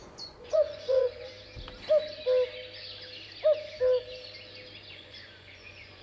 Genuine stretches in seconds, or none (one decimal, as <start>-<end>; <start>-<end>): 1.3-4.9